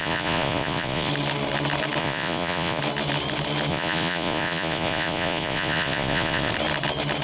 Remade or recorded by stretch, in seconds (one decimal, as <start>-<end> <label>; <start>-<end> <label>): 0.0-1.1 remade; 1.1-2.0 recorded; 2.0-2.8 remade; 2.8-3.7 recorded; 3.7-6.5 remade; 6.5-7.2 recorded